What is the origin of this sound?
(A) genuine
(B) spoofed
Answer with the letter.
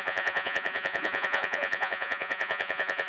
B